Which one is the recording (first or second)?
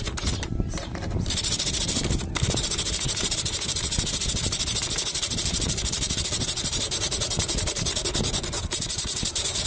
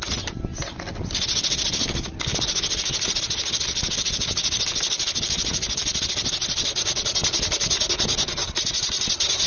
second